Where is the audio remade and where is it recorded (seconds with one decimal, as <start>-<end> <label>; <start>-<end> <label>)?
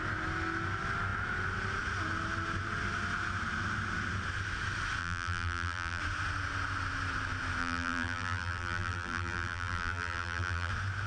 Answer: 0.0-5.0 recorded; 5.0-6.0 remade; 6.0-7.6 recorded; 7.6-10.7 remade; 10.7-11.1 recorded